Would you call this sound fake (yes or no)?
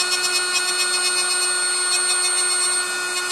no